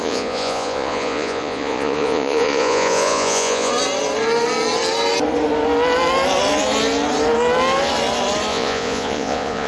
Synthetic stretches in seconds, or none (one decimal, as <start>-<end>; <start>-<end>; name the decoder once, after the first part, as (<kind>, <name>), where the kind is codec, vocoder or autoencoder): 0.0-3.7 (vocoder, Vocos); 8.5-9.7